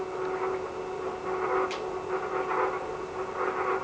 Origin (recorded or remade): recorded